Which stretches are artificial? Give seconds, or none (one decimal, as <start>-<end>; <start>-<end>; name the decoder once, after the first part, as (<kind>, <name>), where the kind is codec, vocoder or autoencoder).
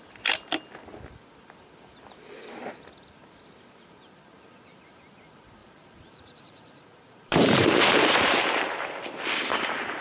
5.6-10.0 (vocoder, BigVGAN v2)